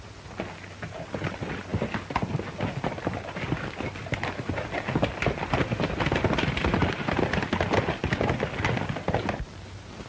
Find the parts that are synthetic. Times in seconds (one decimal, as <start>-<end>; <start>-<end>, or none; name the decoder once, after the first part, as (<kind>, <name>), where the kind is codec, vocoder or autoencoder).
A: none